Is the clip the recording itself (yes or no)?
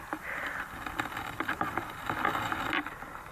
yes